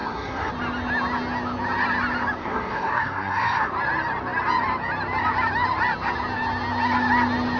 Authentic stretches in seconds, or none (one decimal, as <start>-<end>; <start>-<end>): 0.5-2.4; 3.7-7.6